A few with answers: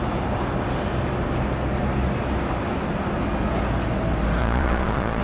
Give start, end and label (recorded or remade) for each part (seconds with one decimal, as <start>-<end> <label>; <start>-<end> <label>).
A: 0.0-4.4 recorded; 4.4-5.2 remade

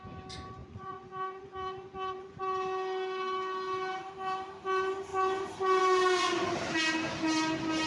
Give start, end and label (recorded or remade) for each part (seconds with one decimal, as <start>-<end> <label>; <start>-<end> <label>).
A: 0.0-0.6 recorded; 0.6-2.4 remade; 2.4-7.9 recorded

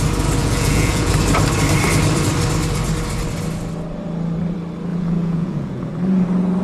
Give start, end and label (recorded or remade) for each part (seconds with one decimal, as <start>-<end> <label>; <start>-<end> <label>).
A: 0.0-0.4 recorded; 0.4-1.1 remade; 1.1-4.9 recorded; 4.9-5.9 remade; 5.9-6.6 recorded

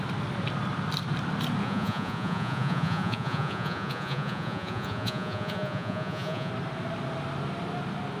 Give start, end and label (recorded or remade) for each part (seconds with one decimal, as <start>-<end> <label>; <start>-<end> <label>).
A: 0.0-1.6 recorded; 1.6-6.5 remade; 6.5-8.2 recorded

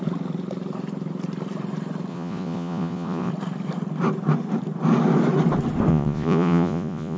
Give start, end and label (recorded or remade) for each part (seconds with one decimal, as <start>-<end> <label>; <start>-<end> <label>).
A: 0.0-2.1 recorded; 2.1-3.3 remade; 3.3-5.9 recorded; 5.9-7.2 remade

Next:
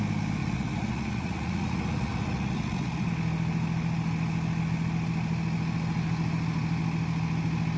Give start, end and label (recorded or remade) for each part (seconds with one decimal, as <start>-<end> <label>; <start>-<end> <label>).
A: 0.0-0.4 recorded; 0.4-3.1 remade; 3.1-7.8 recorded